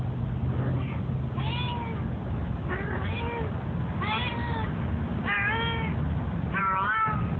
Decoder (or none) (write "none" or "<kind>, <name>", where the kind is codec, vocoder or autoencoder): none